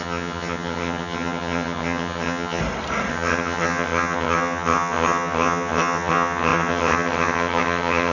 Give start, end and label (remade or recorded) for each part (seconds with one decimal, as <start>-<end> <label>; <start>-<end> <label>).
0.0-2.6 remade; 2.6-3.1 recorded; 3.1-8.1 remade